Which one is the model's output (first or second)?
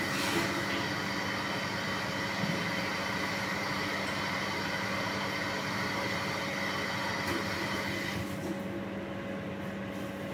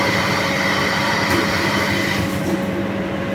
second